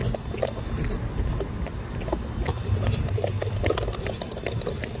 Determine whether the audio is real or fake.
real